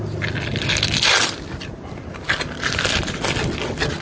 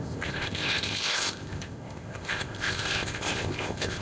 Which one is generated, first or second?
second